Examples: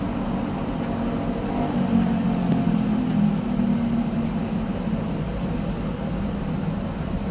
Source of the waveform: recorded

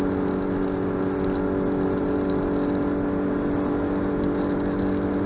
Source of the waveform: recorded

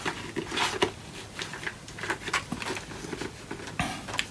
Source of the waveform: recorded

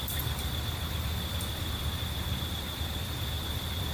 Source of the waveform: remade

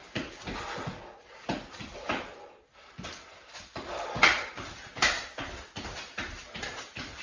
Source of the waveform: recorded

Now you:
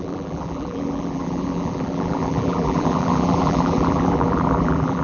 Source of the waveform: remade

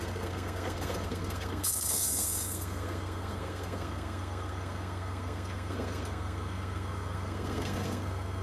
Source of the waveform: remade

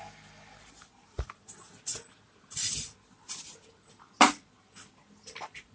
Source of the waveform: recorded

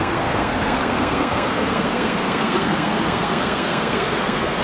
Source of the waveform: remade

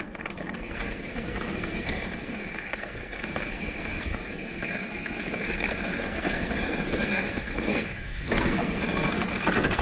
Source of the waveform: remade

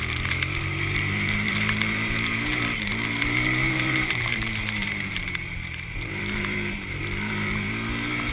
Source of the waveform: remade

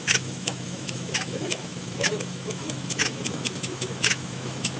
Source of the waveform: remade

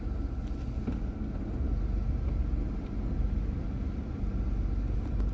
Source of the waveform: recorded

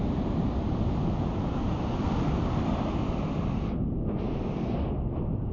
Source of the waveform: recorded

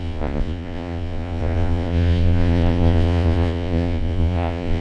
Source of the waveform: remade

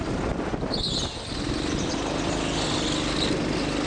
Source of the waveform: recorded